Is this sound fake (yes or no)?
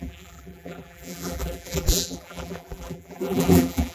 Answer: yes